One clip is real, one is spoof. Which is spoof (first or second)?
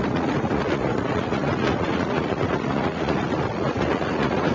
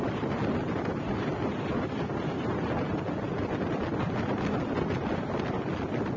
first